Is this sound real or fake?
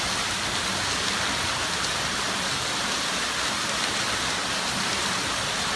real